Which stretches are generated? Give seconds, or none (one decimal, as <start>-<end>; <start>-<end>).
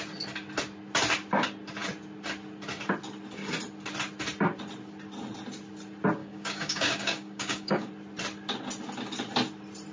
6.2-7.9